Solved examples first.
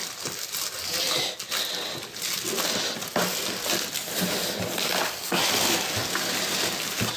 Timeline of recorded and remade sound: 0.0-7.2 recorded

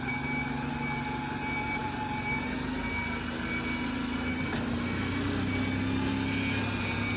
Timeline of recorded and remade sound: 0.0-7.2 recorded